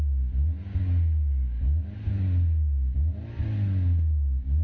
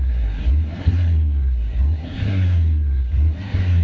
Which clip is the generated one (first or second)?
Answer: second